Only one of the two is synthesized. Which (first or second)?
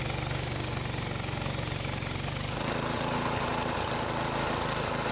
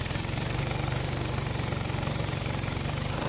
second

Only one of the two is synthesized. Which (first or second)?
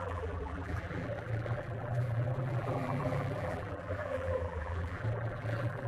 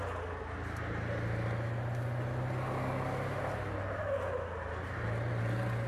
first